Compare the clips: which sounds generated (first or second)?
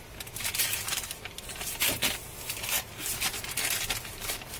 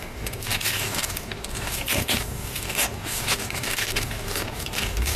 second